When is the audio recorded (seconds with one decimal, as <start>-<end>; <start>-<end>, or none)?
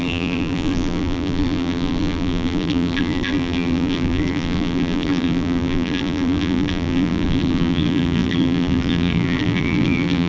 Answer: none